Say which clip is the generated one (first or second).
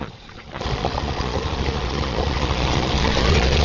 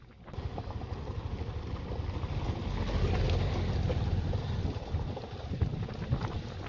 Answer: first